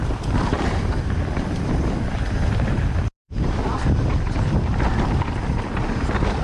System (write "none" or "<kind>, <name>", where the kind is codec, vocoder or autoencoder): vocoder, BigVGAN v2